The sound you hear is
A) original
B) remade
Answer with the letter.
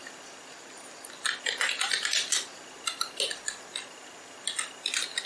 A